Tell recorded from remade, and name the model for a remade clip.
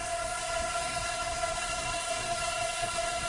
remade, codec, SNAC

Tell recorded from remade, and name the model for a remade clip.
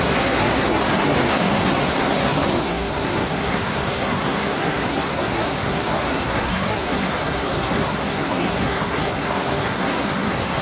remade, codec, SNAC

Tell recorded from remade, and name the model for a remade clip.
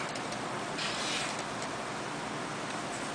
recorded